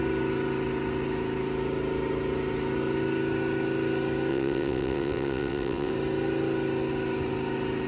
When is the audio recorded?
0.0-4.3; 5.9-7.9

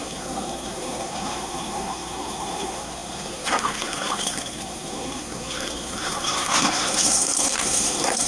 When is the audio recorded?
none

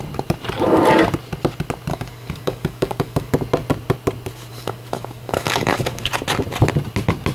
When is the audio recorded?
0.0-1.9; 3.3-4.5; 6.1-7.3

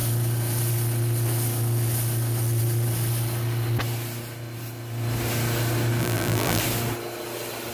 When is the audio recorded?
0.0-6.0; 6.6-7.7